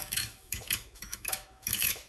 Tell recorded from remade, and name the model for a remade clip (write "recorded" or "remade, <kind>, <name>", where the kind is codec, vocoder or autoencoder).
remade, autoencoder, DAC-VAE